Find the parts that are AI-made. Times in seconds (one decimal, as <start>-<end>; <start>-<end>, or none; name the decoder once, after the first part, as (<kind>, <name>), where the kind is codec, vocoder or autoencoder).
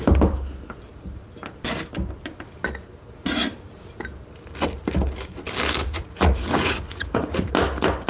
5.8-7.5 (vocoder, Vocos)